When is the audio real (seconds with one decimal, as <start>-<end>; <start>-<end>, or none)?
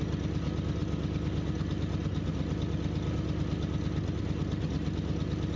0.0-5.6